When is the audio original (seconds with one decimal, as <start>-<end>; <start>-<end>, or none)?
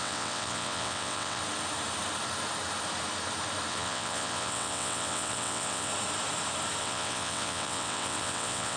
1.4-3.7; 5.9-6.8